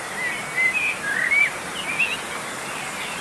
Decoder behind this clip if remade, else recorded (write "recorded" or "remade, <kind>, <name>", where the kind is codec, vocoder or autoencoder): recorded